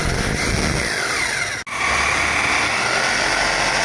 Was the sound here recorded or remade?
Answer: recorded